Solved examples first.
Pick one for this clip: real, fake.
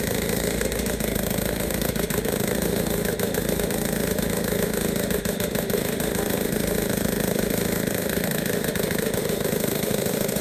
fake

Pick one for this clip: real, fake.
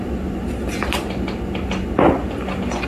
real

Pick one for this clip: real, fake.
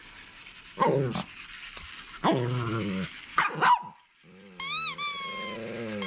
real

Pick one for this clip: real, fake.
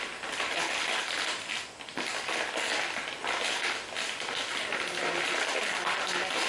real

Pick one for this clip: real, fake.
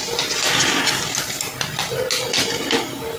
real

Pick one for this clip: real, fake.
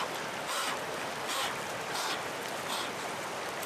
real